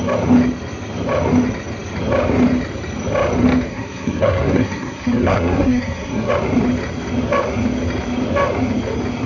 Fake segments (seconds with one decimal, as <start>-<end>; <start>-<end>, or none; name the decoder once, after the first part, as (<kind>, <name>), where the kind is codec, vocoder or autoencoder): 3.7-6.3 (codec, SNAC)